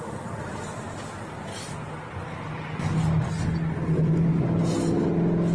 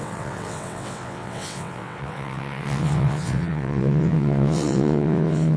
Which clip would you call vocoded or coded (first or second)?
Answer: second